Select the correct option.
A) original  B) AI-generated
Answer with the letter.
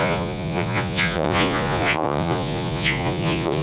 B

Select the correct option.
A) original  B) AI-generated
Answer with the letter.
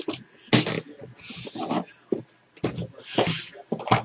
A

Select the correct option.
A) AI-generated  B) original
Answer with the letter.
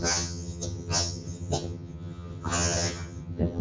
A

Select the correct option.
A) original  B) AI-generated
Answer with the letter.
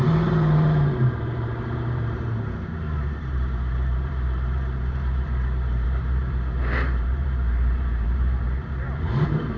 B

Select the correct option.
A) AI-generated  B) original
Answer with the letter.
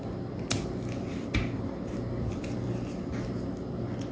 B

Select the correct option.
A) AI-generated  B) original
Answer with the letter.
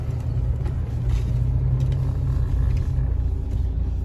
B